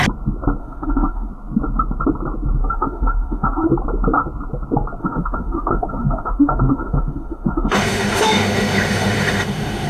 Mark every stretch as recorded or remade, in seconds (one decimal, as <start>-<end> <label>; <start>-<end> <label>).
0.0-0.6 recorded; 0.6-1.3 remade; 1.3-2.6 recorded; 2.6-3.7 remade; 3.7-5.0 recorded; 5.0-9.9 remade